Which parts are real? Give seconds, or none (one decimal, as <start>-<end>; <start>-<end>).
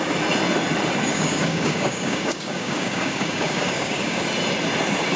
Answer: 0.0-1.1; 4.2-5.2